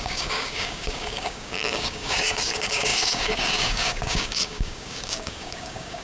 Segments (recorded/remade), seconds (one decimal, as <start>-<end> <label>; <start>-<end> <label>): 0.0-6.0 remade